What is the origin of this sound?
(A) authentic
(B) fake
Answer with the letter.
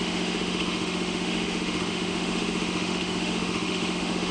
B